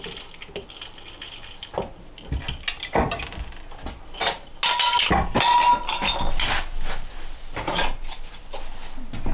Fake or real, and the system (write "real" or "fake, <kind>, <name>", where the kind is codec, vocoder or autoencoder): real